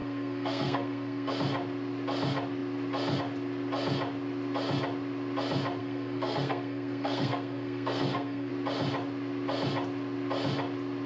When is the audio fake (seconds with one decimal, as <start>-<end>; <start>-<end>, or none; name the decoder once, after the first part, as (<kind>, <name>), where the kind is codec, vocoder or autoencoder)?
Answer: 0.0-1.3 (codec, SNAC); 5.8-8.5